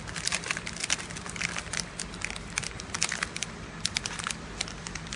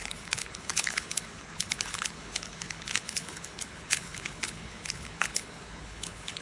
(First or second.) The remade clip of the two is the second